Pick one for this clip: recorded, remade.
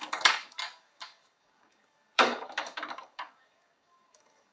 remade